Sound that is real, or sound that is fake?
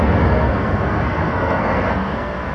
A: fake